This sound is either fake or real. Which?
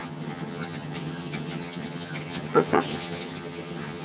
fake